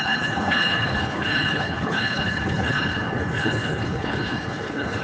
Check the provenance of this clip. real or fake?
fake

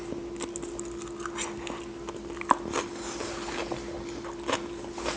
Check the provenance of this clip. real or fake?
real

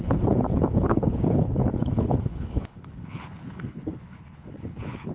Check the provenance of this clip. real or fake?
fake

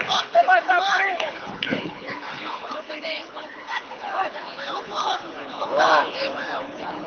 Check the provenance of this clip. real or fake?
fake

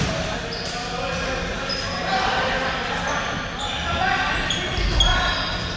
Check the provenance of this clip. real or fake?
real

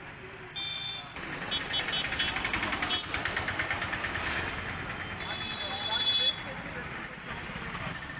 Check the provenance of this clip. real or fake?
real